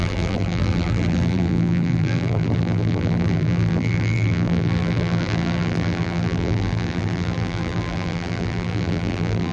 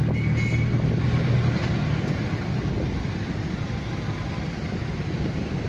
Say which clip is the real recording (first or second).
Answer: second